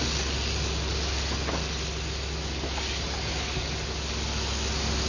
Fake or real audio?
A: real